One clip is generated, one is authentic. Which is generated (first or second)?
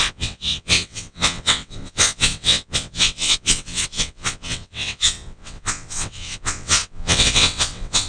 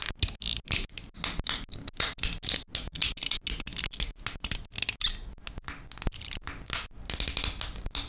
first